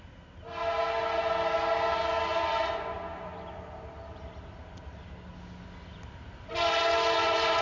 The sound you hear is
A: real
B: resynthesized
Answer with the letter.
A